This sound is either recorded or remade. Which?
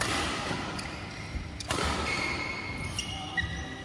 recorded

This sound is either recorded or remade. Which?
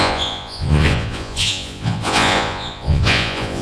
remade